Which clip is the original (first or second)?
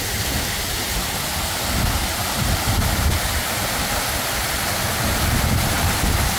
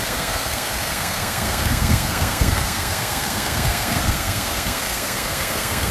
first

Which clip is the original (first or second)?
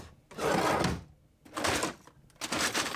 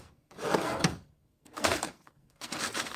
first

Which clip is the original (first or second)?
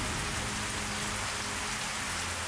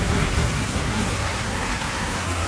first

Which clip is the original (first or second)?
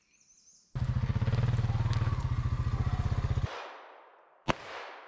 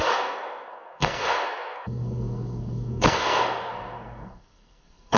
first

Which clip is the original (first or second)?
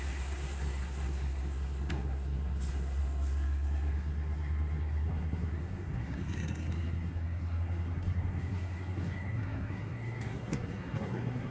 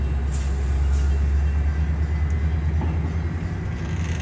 second